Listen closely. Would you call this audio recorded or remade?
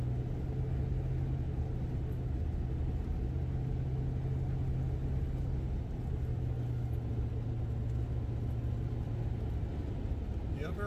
recorded